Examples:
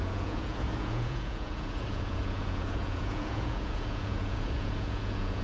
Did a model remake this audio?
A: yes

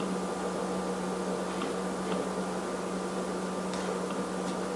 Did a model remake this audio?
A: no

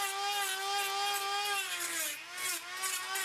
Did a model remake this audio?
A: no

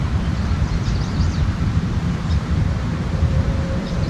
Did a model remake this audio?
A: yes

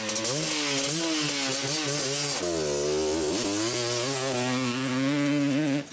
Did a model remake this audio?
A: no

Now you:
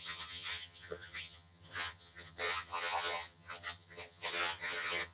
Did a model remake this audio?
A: yes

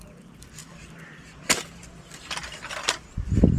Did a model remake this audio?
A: yes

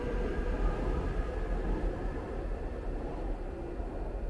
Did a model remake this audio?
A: no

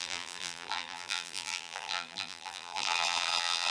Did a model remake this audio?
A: yes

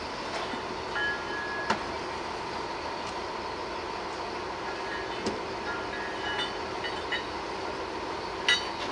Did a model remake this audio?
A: no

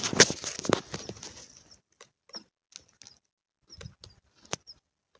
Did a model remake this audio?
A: no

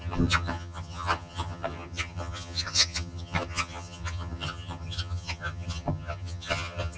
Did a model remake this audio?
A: yes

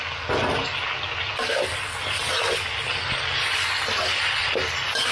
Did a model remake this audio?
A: no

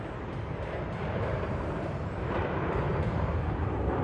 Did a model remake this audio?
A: yes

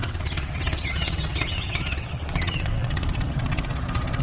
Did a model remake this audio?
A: yes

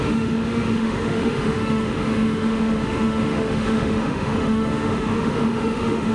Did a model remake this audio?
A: yes